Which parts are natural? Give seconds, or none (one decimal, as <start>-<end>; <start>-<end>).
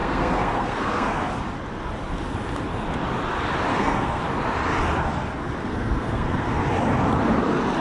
1.3-3.7; 4.2-5.6; 6.6-7.8